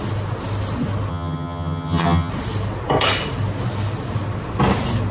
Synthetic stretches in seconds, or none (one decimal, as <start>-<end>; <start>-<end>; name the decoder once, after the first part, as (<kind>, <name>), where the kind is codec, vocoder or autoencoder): 1.1-2.3 (vocoder, HiFi-GAN)